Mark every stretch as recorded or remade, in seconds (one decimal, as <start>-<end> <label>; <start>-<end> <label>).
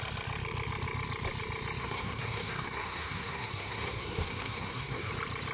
0.0-1.8 recorded; 1.8-5.1 remade; 5.1-5.5 recorded